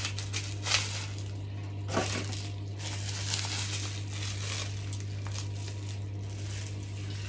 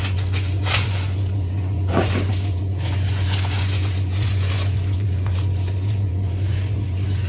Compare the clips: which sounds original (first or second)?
first